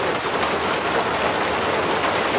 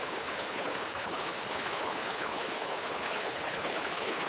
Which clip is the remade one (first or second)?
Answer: second